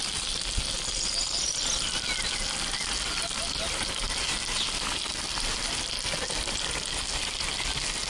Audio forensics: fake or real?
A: real